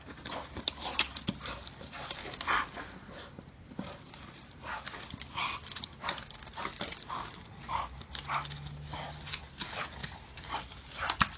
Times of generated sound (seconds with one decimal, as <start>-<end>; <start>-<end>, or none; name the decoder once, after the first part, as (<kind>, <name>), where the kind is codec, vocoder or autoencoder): 10.0-10.6 (vocoder, BigVGAN v2)